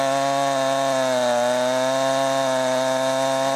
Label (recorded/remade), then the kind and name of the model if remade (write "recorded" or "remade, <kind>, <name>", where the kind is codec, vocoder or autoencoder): recorded